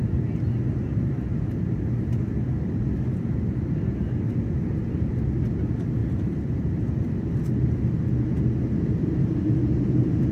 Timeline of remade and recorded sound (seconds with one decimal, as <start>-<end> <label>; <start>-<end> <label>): 0.0-6.0 recorded; 6.0-7.3 remade; 7.3-9.0 recorded; 9.0-9.6 remade; 9.6-10.3 recorded